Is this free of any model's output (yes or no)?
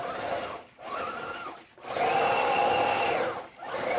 yes